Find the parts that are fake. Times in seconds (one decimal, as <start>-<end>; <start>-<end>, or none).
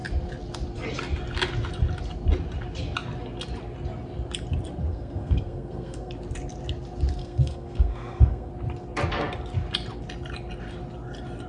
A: 4.9-6.1; 7.2-8.5